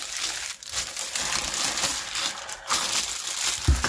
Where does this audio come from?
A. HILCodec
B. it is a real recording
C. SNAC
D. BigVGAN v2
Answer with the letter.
B